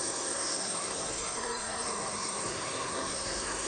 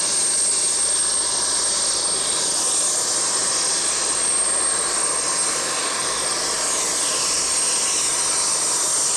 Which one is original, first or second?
second